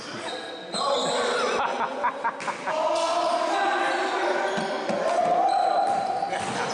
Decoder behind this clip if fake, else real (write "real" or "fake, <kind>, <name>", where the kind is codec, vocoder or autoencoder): real